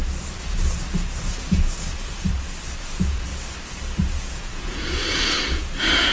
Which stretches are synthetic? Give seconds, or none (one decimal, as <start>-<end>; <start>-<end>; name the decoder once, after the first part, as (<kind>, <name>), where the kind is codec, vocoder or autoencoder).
2.8-3.3 (vocoder, Vocos); 4.1-6.1